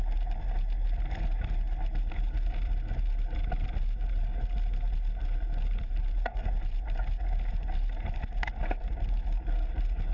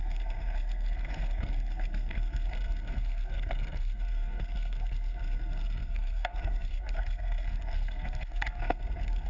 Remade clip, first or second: second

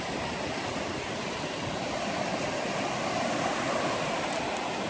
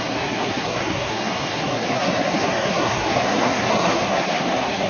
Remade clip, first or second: second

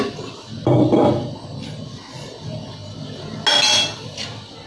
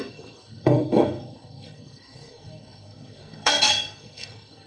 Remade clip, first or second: second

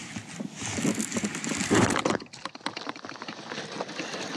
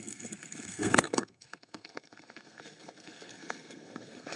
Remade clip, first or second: second